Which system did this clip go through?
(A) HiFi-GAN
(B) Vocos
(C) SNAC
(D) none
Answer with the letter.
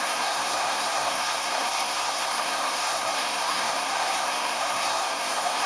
C